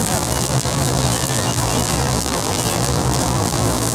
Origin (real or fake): fake